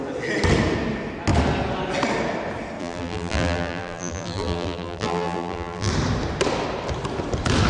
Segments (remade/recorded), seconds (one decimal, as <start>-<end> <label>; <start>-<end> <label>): 0.0-2.8 recorded; 2.8-5.9 remade; 5.9-7.7 recorded